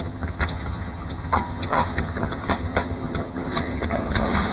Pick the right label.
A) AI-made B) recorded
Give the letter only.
A